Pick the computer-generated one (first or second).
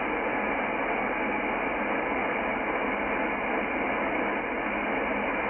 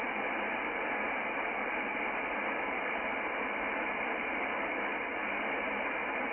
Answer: second